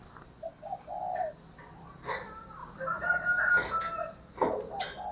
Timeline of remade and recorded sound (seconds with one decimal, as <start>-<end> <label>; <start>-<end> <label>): 0.0-0.5 recorded; 0.5-1.0 remade; 1.0-5.1 recorded